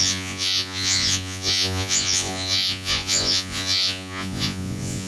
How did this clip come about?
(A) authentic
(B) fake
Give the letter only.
B